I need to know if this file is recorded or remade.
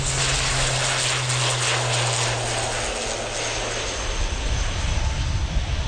recorded